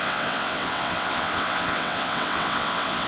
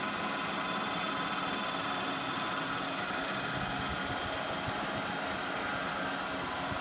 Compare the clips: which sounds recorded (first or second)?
second